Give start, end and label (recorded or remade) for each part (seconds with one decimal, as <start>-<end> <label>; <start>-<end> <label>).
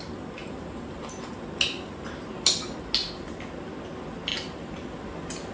0.0-0.4 recorded; 0.4-1.3 remade; 1.3-4.3 recorded; 4.3-4.9 remade; 4.9-5.5 recorded